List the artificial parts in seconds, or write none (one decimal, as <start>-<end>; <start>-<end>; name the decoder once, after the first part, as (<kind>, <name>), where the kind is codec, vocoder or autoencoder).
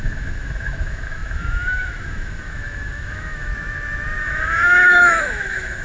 0.0-3.5 (autoencoder, DAC-VAE); 4.2-5.8